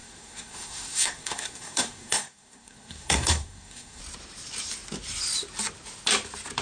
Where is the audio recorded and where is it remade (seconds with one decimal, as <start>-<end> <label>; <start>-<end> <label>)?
0.0-4.0 remade; 4.0-6.6 recorded